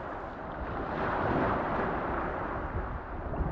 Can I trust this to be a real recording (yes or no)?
yes